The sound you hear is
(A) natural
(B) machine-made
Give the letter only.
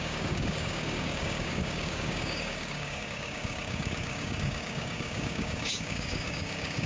B